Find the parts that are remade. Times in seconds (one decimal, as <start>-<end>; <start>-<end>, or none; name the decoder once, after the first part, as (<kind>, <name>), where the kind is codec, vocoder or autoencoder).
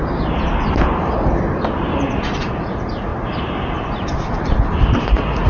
2.7-3.1 (vocoder, Vocos); 5.0-5.5